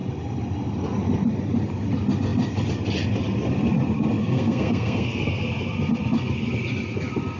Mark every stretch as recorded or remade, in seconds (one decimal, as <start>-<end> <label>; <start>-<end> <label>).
0.0-4.2 recorded; 4.2-5.4 remade; 5.4-7.4 recorded